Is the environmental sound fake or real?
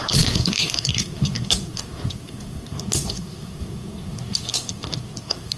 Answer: fake